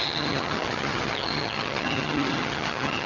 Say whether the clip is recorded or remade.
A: remade